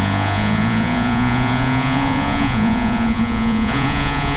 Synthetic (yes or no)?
yes